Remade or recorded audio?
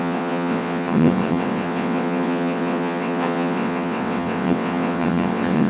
remade